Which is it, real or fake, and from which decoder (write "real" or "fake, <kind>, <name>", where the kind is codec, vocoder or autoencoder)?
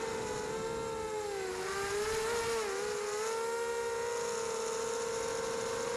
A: real